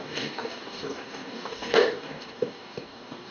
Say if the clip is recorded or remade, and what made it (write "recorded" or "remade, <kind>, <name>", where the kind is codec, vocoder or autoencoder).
remade, codec, DAC